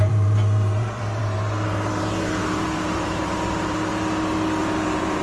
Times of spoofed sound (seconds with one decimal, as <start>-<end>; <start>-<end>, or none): 0.0-3.9; 4.6-5.2